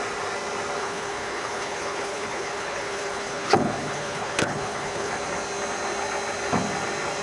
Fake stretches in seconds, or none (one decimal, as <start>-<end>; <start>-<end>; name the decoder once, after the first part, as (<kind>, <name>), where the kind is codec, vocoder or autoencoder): 0.8-5.1 (codec, HILCodec)